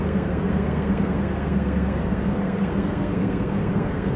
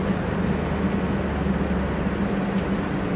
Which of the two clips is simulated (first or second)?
first